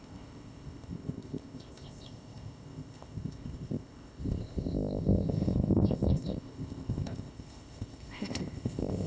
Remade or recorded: remade